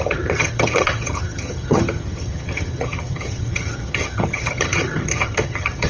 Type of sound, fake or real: fake